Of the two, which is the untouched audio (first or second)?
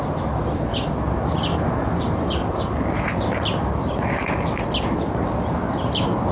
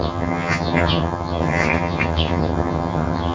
first